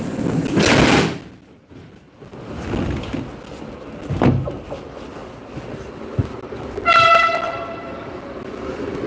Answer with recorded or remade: recorded